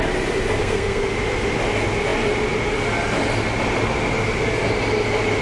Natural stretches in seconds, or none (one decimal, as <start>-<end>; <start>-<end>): 0.0-0.6; 1.1-5.4